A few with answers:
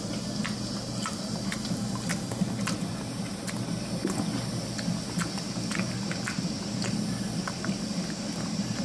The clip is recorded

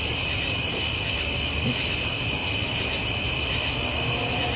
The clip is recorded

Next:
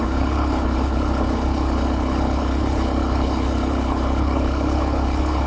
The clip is remade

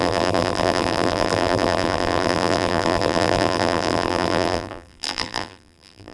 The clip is remade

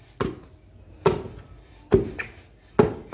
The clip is recorded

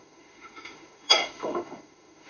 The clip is remade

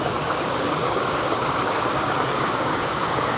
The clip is remade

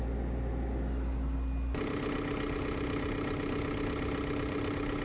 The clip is recorded